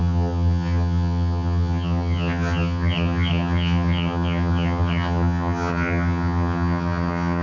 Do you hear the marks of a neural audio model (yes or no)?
yes